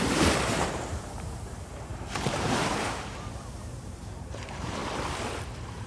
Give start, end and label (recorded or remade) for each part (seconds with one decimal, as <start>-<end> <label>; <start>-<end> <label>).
0.0-4.8 remade; 4.8-5.3 recorded; 5.3-5.9 remade